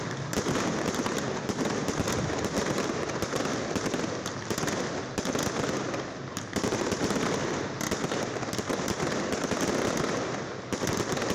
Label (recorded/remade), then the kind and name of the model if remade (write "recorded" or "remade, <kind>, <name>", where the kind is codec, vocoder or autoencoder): recorded